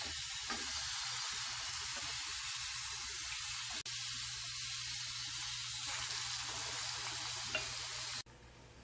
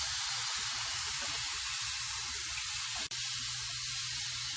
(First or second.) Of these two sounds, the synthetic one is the second